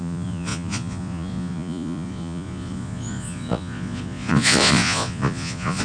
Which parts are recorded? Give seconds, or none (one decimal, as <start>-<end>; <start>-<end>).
none